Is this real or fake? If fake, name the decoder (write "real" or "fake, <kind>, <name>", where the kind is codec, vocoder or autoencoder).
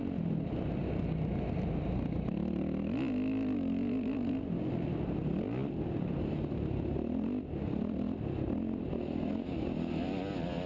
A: real